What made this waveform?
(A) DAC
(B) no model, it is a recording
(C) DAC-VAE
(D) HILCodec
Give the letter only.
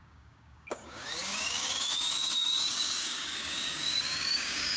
A